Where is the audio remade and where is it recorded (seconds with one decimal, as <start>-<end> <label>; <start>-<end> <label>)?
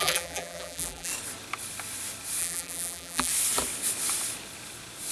0.0-1.1 remade; 1.1-2.4 recorded; 2.4-3.3 remade; 3.3-5.1 recorded